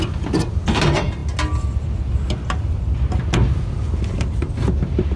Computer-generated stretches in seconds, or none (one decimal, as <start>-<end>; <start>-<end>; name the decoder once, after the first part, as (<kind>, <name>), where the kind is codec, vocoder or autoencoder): none